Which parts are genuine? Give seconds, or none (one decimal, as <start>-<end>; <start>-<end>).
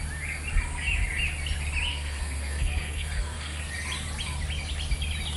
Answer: 0.0-1.9; 3.6-5.4